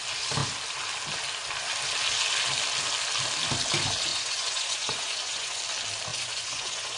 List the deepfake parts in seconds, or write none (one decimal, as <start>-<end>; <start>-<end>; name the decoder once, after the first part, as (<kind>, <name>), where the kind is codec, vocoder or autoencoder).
4.1-5.6 (vocoder, Vocos); 6.1-7.0